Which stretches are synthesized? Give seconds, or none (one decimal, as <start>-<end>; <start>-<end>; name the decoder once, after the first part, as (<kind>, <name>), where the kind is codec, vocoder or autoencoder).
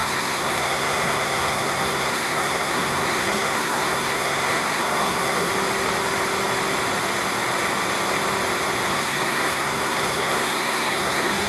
0.0-5.5 (codec, SNAC); 8.9-11.5